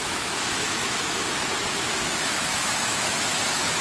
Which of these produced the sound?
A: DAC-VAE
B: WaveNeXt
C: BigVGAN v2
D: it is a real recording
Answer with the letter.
A